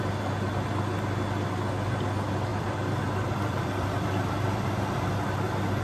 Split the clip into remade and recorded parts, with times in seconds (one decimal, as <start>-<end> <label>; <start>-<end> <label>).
0.0-2.5 recorded; 2.5-5.8 remade